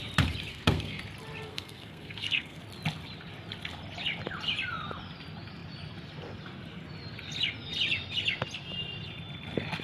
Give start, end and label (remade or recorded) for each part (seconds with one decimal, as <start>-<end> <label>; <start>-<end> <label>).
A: 0.0-0.5 recorded; 0.5-1.0 remade; 1.0-1.5 recorded; 1.5-2.6 remade; 2.6-9.8 recorded